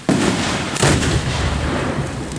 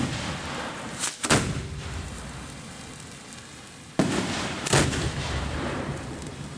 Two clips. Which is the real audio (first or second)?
second